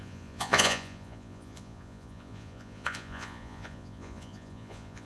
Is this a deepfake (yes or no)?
yes